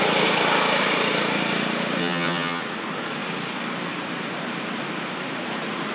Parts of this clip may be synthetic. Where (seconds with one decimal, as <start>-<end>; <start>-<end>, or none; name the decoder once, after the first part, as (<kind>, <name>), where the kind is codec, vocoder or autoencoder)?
2.0-2.6 (vocoder, HiFi-GAN)